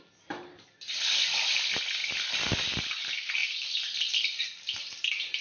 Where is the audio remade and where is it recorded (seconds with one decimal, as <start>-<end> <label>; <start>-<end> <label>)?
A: 0.0-5.4 recorded